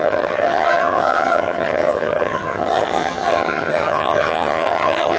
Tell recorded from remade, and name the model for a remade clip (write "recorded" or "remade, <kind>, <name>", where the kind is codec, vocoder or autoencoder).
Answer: remade, vocoder, HiFi-GAN